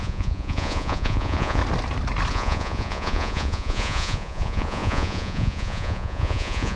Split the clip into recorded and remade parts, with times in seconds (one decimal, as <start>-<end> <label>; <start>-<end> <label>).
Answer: 0.0-1.6 remade; 1.6-2.3 recorded; 2.3-6.8 remade